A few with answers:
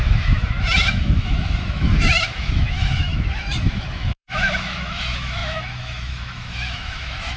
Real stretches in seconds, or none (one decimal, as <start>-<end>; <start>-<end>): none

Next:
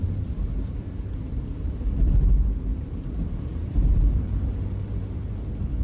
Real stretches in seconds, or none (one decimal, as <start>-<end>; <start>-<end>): 0.0-2.7; 4.1-5.8

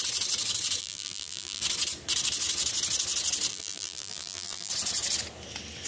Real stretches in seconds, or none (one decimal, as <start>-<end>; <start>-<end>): 0.0-0.8; 1.6-3.5; 4.7-5.9

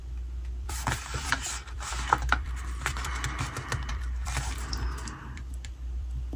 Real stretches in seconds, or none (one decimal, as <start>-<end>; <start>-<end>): none